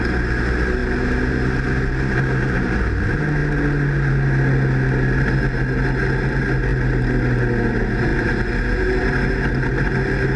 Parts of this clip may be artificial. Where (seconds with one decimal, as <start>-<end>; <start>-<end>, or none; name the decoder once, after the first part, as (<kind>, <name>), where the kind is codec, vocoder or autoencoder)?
none